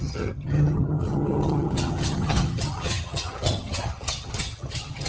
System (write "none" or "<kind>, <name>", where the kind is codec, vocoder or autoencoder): vocoder, HiFi-GAN